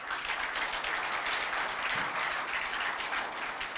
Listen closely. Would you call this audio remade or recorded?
recorded